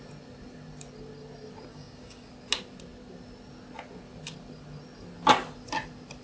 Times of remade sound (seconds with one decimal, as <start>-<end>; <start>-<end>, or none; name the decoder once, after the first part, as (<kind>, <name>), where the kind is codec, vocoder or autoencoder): 1.7-2.3 (codec, DAC)